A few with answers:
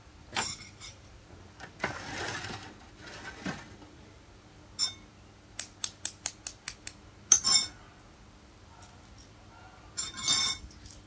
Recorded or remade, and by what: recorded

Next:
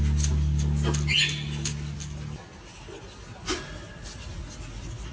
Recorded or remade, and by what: recorded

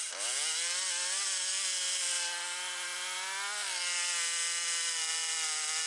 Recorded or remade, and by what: recorded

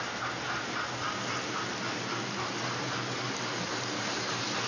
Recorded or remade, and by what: recorded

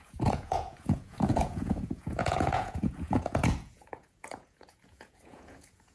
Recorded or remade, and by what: remade, vocoder, Vocos